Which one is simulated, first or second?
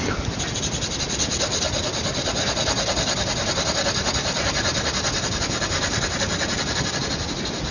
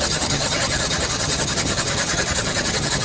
second